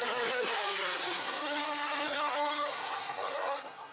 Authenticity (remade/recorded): remade